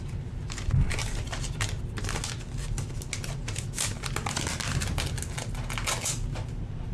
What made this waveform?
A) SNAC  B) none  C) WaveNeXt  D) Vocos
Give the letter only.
B